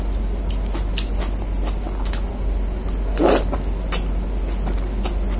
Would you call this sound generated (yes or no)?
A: no